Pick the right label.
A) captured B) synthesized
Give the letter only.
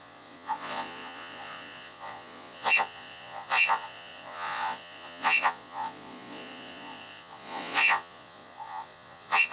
B